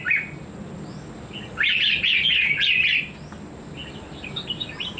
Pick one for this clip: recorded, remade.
recorded